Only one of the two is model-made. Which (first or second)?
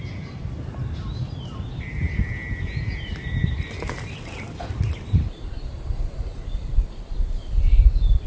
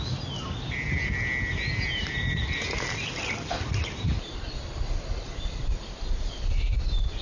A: first